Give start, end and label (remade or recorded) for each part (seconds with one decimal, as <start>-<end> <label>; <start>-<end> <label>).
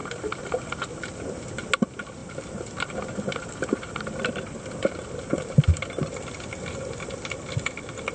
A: 0.0-8.1 recorded